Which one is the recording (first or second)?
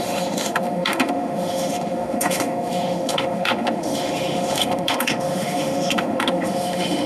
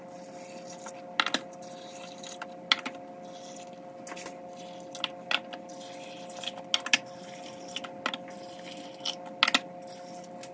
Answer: second